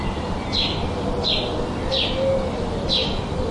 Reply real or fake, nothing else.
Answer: real